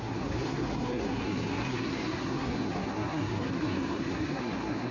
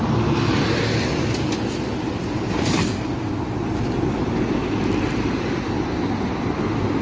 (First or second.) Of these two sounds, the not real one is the first